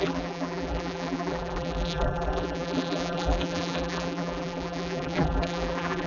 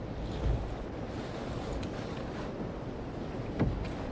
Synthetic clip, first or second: first